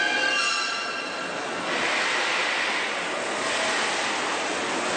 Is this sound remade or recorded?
recorded